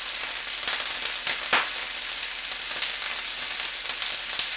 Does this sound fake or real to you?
real